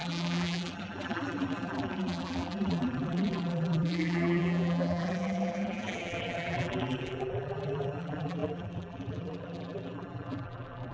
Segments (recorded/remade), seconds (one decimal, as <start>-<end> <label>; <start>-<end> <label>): 0.0-10.9 remade